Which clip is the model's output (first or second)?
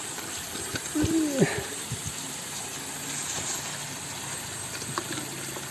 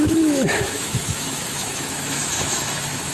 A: second